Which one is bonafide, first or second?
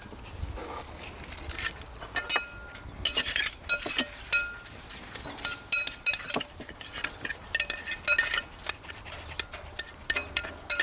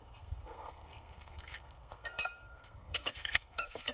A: first